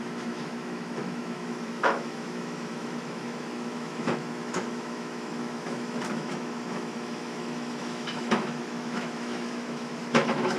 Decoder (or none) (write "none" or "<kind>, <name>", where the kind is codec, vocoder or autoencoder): autoencoder, DAC-VAE